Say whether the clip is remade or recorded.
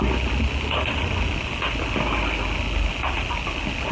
recorded